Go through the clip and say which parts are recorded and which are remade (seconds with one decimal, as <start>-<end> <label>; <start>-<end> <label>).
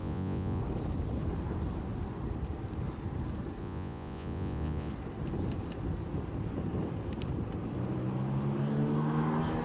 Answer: 0.0-0.6 remade; 0.6-3.6 recorded; 3.6-4.9 remade; 4.9-9.6 recorded